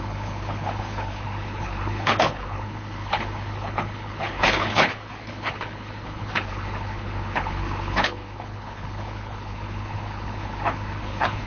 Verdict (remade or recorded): remade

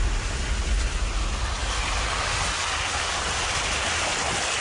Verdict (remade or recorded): recorded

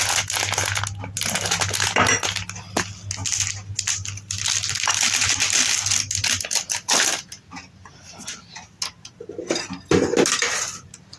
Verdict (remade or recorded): recorded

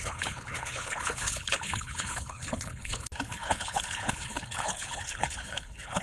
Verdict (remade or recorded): remade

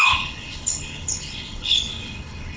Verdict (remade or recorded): remade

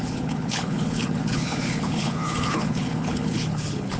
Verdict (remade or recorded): remade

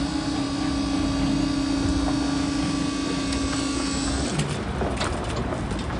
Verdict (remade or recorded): recorded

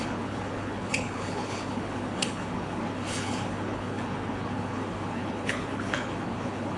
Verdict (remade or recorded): remade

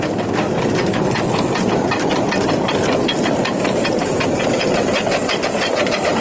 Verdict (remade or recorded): recorded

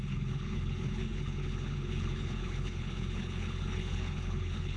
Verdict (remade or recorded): remade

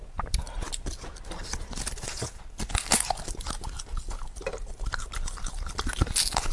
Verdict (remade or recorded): recorded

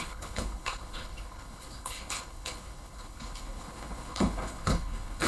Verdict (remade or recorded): remade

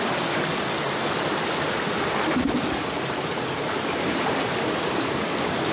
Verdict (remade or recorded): recorded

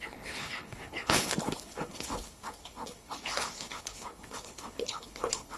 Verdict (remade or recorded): remade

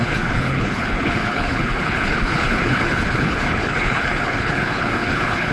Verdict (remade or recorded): remade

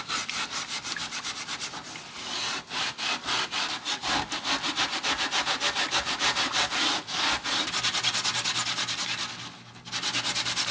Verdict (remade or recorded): recorded